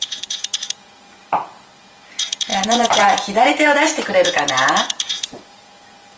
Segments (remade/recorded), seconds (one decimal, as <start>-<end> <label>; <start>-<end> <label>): 0.0-6.2 remade